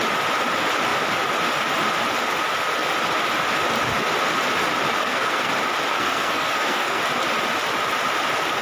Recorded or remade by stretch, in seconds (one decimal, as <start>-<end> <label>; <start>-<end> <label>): 0.0-5.0 recorded; 5.0-5.5 remade; 5.5-5.9 recorded; 5.9-7.0 remade; 7.0-8.6 recorded